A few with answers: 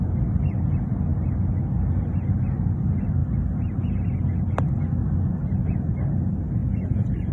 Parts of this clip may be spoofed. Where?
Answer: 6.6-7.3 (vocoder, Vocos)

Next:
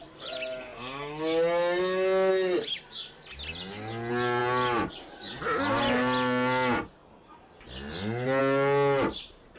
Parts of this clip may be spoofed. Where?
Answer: none

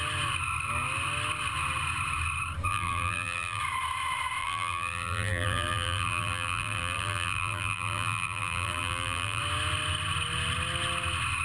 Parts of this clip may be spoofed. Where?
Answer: 2.7-3.6 (vocoder, BigVGAN v2); 4.4-9.4

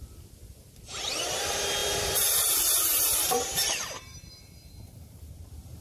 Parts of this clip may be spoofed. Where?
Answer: 1.8-5.3 (vocoder, BigVGAN v2)

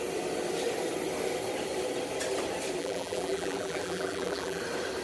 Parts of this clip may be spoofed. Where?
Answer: 2.8-4.6 (vocoder, BigVGAN v2)

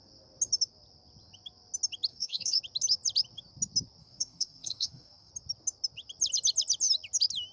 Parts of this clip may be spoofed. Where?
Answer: 2.1-2.6 (codec, DAC); 4.0-5.3

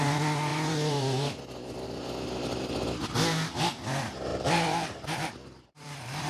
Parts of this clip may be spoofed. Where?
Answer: 4.3-6.3 (vocoder, BigVGAN v2)